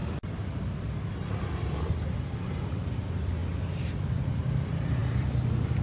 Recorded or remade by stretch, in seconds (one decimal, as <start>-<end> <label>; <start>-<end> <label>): 0.0-3.4 remade; 3.4-3.9 recorded; 3.9-5.8 remade